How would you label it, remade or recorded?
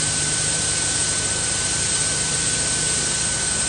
remade